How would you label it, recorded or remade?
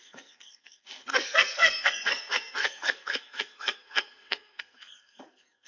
remade